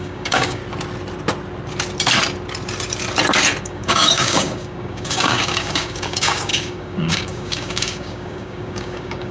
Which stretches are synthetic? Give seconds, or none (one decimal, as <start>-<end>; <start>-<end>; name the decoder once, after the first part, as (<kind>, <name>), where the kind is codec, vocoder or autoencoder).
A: 0.0-0.6 (codec, DAC); 3.6-9.3